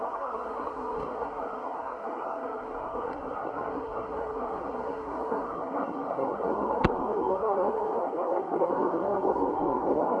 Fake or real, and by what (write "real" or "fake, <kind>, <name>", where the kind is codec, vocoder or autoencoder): fake, codec, SNAC